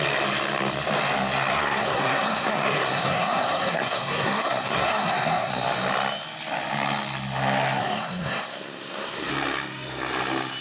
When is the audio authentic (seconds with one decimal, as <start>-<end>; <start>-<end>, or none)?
0.0-1.5; 5.5-7.8; 9.3-10.6